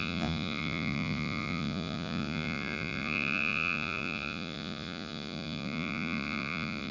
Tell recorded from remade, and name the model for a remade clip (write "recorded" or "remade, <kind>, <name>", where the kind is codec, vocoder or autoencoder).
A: remade, vocoder, Vocos